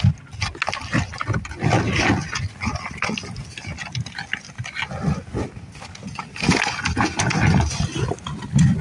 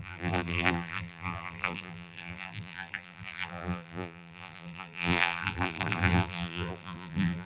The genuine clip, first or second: first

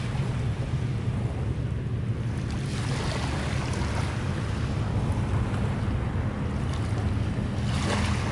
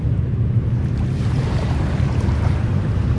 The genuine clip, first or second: first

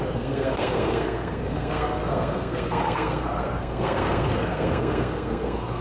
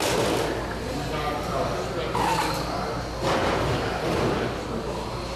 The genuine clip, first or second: second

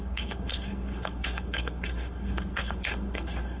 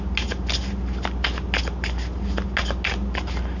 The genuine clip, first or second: second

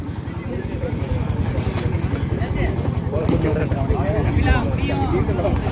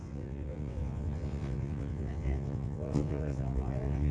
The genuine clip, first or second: first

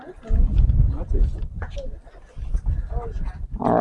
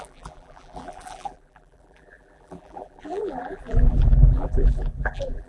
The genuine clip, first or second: first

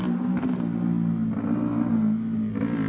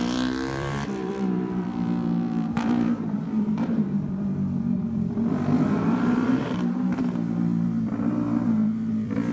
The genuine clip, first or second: first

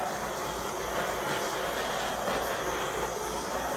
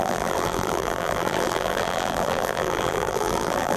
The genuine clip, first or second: first